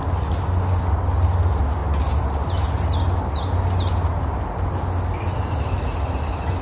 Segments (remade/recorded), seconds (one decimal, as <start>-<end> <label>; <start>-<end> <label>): 0.0-6.6 recorded